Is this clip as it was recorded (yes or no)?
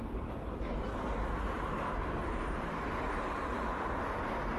yes